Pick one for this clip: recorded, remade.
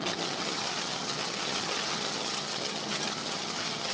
remade